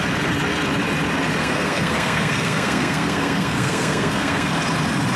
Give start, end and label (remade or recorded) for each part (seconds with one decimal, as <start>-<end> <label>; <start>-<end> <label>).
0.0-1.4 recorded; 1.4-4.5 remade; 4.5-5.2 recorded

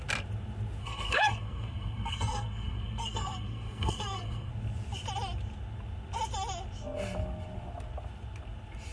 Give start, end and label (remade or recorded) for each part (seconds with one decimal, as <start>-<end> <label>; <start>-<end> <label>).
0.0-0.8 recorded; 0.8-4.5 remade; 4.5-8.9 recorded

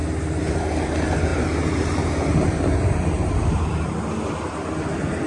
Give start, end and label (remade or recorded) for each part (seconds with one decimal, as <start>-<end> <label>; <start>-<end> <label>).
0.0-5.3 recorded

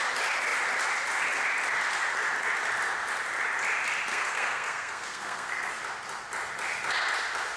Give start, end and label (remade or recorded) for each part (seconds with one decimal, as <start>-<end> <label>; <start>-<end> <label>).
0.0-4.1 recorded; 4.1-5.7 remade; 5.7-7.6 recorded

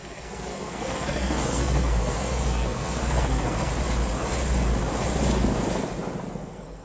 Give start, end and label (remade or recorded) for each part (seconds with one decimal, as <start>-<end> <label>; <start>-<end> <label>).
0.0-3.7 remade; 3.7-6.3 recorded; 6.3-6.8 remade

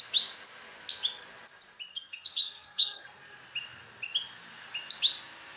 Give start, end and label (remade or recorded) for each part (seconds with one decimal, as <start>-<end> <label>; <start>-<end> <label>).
0.0-1.9 recorded; 1.9-3.2 remade; 3.2-5.6 recorded

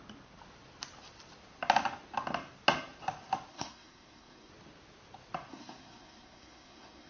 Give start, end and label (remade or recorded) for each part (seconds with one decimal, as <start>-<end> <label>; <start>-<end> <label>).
0.0-3.5 recorded; 3.5-4.5 remade; 4.5-5.5 recorded; 5.5-7.1 remade

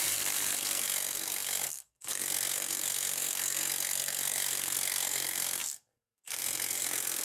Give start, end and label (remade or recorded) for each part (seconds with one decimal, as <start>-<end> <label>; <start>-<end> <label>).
0.0-7.2 remade